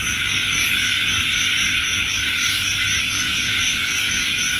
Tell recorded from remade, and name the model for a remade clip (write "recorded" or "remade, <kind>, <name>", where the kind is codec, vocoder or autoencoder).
remade, codec, DAC